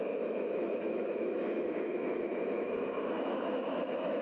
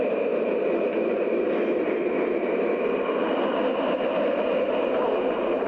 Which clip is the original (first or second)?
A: second